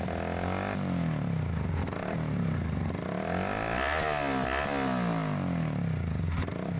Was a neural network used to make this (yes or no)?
no